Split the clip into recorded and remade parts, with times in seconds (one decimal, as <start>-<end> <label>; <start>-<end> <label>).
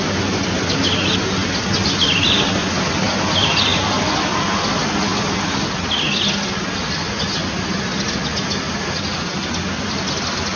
0.0-10.6 recorded